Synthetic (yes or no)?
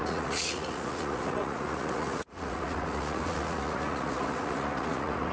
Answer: yes